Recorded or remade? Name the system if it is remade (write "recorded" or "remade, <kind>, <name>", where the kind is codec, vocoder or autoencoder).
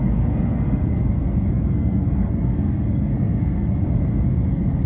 remade, codec, SNAC